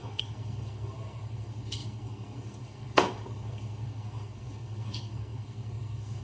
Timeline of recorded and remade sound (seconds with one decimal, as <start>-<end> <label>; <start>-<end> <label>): 0.0-6.2 remade